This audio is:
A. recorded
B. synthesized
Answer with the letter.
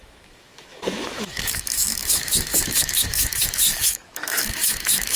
B